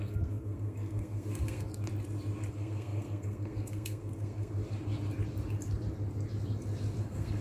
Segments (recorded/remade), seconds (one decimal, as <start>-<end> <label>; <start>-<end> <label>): 0.0-1.7 remade; 1.7-2.5 recorded; 2.5-4.6 remade; 4.6-7.0 recorded; 7.0-7.4 remade